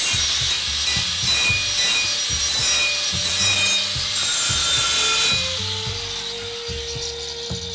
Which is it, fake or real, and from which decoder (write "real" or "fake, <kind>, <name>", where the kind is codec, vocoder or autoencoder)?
real